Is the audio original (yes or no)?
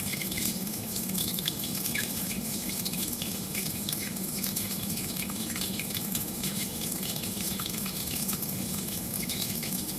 no